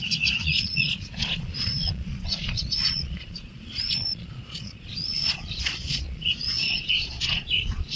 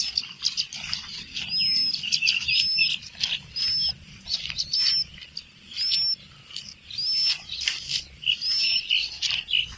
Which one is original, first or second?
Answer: second